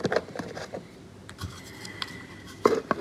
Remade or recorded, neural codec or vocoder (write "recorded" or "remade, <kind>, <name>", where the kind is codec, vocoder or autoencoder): remade, vocoder, BigVGAN v2